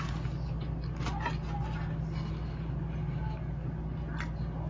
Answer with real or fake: real